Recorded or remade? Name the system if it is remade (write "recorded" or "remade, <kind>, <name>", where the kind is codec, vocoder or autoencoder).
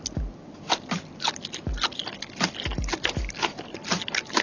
recorded